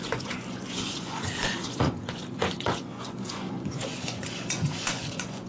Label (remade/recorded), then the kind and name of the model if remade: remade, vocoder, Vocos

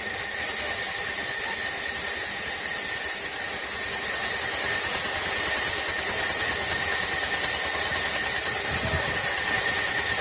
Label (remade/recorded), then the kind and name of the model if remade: recorded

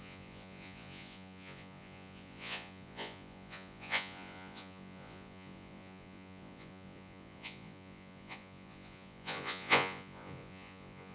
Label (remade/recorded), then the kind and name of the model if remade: remade, vocoder, Vocos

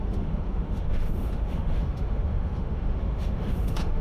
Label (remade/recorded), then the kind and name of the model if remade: remade, autoencoder, DAC-VAE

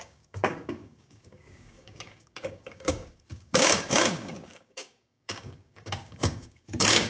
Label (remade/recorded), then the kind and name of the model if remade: remade, codec, DAC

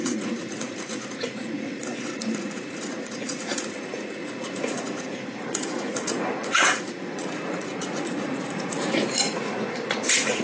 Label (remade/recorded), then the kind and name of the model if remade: remade, vocoder, Vocos